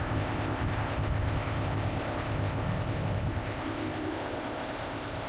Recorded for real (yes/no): no